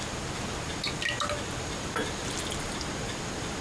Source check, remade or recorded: recorded